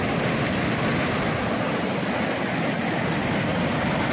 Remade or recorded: recorded